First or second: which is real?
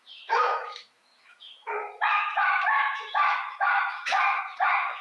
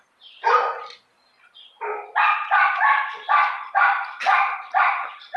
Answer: second